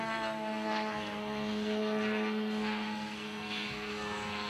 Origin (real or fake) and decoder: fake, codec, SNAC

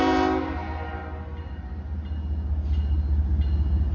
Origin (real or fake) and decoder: real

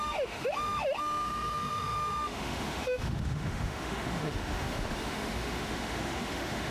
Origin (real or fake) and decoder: fake, autoencoder, DAC-VAE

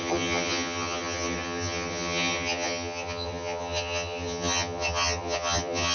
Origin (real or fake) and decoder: fake, vocoder, HiFi-GAN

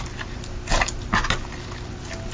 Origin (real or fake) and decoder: real